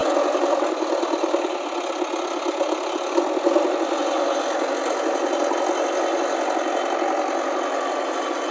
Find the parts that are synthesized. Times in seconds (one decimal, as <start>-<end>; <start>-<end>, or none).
none